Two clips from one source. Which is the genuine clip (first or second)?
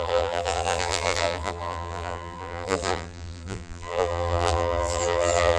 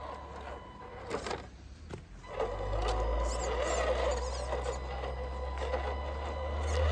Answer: second